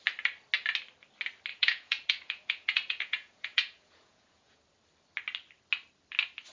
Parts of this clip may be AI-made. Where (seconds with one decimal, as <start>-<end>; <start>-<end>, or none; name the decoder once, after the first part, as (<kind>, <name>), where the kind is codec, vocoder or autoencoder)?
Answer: 1.5-4.6 (vocoder, Vocos)